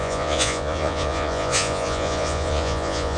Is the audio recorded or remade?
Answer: remade